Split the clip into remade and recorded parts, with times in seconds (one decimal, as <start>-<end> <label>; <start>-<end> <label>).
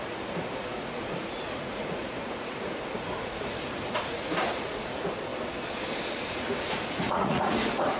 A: 0.0-5.3 remade; 5.3-6.1 recorded; 6.1-8.0 remade